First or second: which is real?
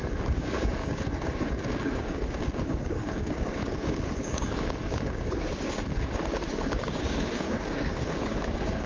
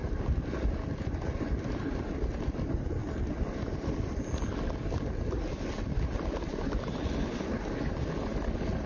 second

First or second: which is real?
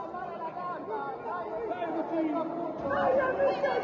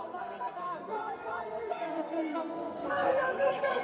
first